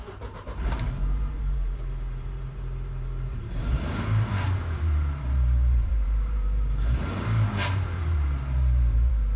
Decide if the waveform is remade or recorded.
remade